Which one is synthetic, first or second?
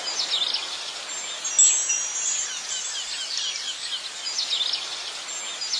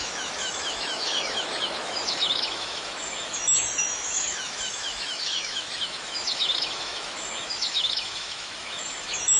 second